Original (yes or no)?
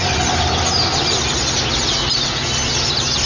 yes